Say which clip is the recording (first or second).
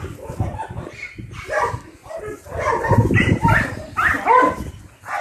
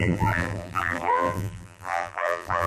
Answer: first